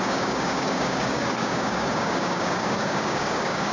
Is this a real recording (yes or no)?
no